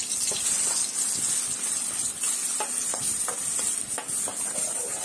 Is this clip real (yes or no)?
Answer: yes